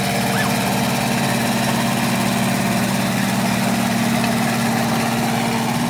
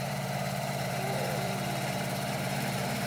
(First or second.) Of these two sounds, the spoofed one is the second